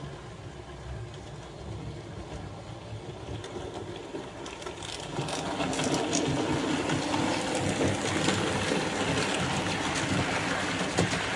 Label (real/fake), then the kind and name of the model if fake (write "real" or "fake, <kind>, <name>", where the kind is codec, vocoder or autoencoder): real